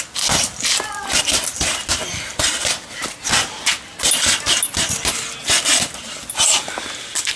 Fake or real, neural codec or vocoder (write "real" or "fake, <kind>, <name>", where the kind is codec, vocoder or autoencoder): real